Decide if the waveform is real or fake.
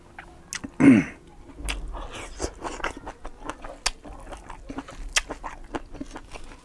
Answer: real